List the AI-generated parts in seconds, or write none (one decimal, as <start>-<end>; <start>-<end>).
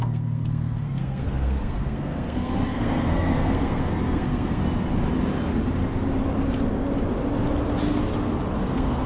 0.0-4.6; 8.6-9.1